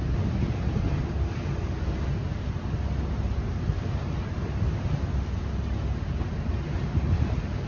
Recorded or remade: recorded